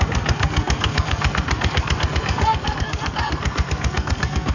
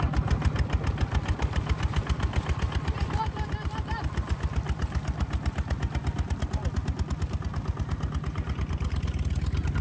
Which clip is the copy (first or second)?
first